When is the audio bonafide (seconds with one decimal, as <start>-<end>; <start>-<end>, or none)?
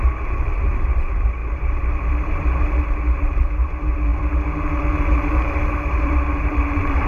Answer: none